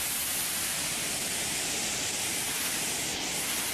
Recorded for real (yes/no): yes